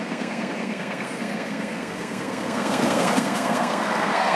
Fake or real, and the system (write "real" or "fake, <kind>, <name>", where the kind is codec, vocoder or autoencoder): fake, codec, SNAC